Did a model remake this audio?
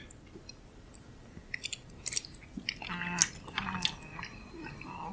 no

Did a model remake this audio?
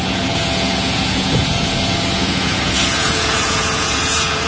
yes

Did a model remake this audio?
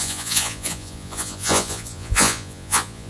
yes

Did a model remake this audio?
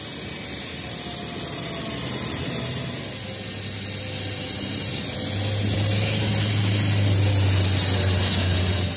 no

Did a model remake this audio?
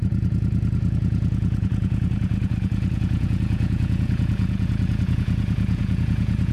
yes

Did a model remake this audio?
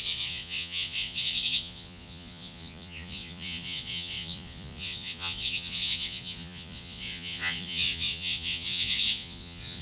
yes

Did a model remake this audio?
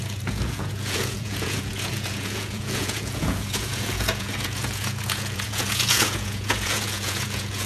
yes